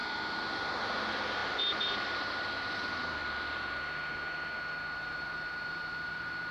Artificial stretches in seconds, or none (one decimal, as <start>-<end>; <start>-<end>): 0.8-3.2; 5.0-6.5